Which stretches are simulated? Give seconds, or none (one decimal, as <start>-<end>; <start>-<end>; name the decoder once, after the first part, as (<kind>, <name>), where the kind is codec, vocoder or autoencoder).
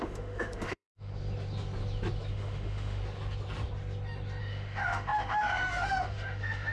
0.0-1.1 (autoencoder, DAC-VAE); 2.3-3.0; 4.4-6.7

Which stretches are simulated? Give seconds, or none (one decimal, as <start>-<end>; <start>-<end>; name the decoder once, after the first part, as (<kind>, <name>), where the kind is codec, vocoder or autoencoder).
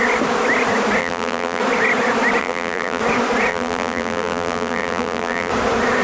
1.0-1.6 (vocoder, BigVGAN v2); 2.4-3.0; 3.5-5.5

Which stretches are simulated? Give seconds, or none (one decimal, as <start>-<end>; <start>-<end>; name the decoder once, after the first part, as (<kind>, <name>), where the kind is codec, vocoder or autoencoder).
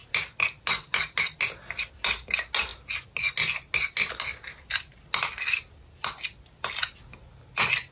none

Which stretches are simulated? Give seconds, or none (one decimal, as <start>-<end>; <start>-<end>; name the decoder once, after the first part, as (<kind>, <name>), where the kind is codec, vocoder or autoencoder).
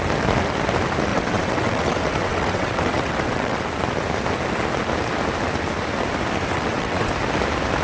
1.1-3.6 (vocoder, WaveNeXt); 6.5-7.1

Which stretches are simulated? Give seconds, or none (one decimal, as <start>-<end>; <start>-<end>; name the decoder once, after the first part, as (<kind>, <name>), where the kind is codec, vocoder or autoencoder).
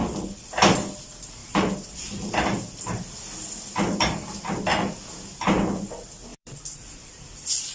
0.0-1.0 (vocoder, BigVGAN v2); 1.4-4.0; 6.3-7.7